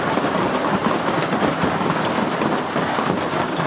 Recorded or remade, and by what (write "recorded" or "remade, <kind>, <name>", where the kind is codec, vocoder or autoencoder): recorded